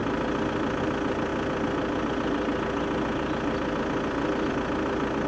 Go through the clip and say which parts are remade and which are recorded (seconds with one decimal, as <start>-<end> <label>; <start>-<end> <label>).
0.0-5.3 recorded